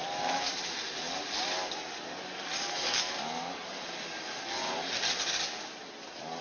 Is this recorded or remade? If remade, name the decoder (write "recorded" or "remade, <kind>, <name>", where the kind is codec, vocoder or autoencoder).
recorded